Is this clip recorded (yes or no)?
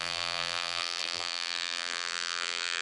no